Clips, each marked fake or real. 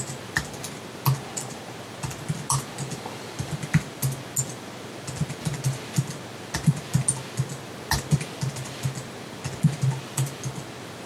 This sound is real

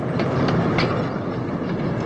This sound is real